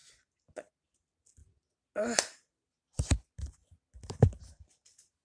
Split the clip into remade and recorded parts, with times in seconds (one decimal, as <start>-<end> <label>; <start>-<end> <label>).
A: 0.0-5.2 recorded